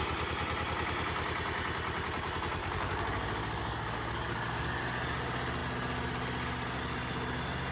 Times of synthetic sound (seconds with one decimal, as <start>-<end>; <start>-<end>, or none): 2.6-4.8